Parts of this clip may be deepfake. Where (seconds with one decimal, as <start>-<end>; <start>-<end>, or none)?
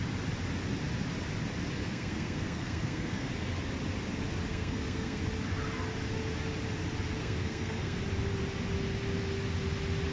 1.8-3.3; 4.5-5.2; 7.2-8.0